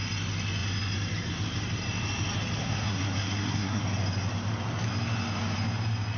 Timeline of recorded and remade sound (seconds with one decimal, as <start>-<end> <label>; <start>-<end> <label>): 0.0-2.6 recorded; 2.6-3.8 remade; 3.8-6.2 recorded